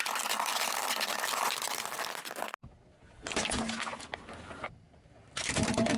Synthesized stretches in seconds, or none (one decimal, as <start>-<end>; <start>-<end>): none